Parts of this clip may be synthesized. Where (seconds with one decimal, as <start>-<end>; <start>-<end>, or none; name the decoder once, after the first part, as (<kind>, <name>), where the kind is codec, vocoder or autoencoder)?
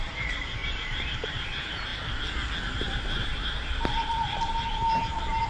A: 0.0-1.9 (vocoder, BigVGAN v2); 2.6-5.5